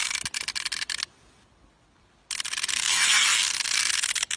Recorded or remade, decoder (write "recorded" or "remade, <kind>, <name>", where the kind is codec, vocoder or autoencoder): recorded